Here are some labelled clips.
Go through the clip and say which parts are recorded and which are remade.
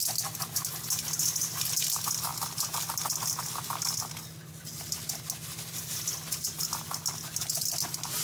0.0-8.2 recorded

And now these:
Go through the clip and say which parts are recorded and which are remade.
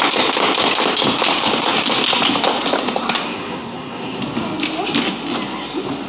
0.0-3.2 recorded; 3.2-4.2 remade; 4.2-6.1 recorded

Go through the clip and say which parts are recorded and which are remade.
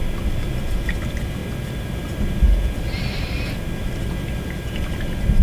0.0-5.4 recorded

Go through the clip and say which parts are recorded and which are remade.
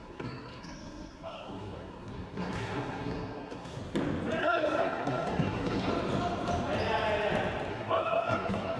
0.0-3.8 remade; 3.8-4.4 recorded; 4.4-5.9 remade; 5.9-7.7 recorded; 7.7-8.8 remade